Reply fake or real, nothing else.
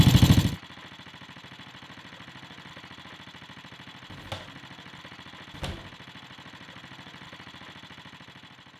real